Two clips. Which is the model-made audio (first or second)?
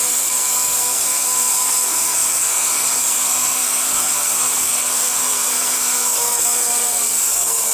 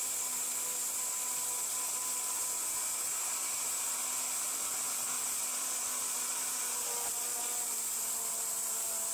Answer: first